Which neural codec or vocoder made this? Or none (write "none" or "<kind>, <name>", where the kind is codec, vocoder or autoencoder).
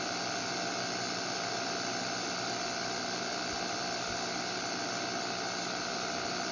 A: none